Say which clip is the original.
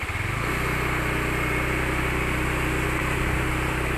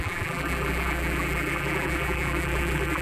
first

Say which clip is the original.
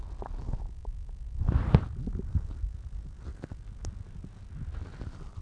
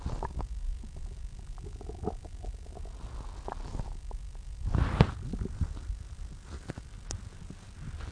second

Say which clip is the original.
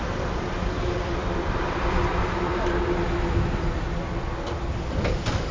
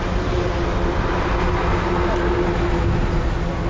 second